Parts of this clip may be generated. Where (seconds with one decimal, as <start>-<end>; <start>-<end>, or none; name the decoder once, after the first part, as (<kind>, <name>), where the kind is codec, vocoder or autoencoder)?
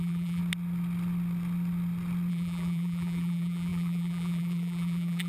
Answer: 0.0-0.4 (vocoder, BigVGAN v2); 2.3-5.3